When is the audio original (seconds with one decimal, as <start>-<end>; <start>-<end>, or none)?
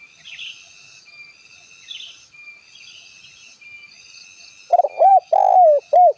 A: 0.0-6.2